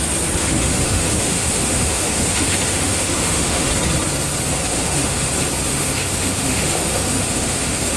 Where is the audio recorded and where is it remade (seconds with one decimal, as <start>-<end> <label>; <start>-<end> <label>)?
0.0-0.4 recorded; 0.4-3.7 remade; 3.7-4.7 recorded; 4.7-5.3 remade; 5.3-5.7 recorded; 5.7-8.0 remade